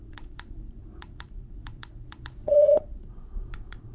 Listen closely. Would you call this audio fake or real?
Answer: fake